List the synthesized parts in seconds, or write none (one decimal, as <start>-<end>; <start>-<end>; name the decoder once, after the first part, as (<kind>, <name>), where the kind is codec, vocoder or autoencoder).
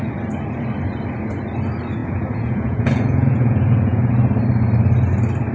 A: 2.0-4.1 (vocoder, Vocos)